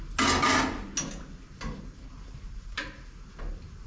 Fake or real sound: real